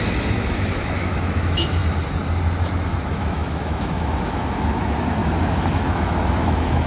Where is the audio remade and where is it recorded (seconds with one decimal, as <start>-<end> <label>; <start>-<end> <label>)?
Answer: 0.0-1.8 remade; 1.8-3.1 recorded; 3.1-5.2 remade; 5.2-5.8 recorded; 5.8-6.9 remade